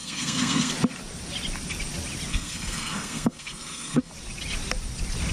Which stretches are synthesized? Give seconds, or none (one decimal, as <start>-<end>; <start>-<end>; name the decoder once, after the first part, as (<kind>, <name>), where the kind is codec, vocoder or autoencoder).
0.0-0.7 (codec, SNAC); 2.3-4.1